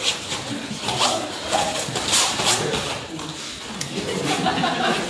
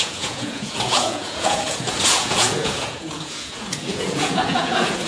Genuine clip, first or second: first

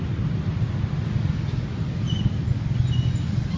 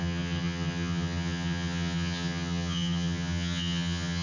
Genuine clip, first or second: first